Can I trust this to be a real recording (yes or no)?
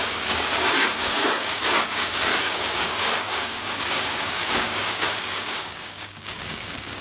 no